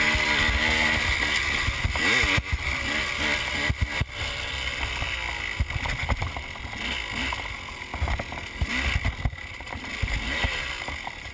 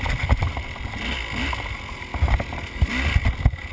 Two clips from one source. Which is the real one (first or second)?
first